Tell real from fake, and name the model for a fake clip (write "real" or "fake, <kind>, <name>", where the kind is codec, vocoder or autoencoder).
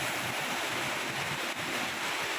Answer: fake, vocoder, BigVGAN v2